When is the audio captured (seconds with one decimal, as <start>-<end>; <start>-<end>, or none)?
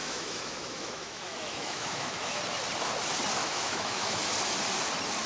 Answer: 2.4-3.4; 4.2-5.3